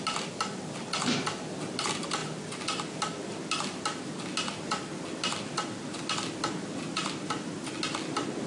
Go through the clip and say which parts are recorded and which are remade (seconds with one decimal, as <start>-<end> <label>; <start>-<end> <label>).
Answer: 0.0-8.5 recorded